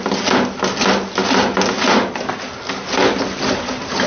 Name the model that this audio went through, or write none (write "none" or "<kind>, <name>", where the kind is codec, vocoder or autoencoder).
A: none